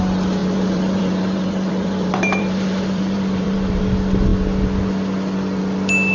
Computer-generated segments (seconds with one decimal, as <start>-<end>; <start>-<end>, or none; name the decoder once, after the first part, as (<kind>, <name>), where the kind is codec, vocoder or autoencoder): 0.4-3.8 (vocoder, BigVGAN v2)